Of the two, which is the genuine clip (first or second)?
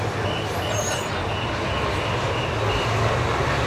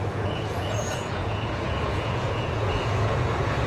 first